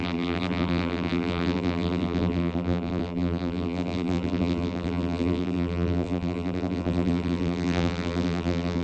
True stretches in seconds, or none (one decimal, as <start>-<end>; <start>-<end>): none